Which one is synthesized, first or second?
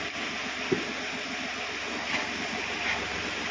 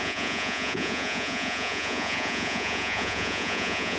second